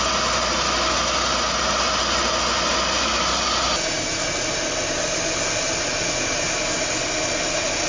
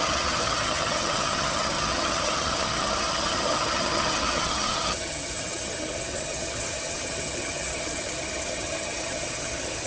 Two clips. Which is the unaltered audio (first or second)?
first